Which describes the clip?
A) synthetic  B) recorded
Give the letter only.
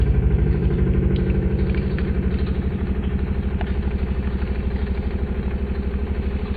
A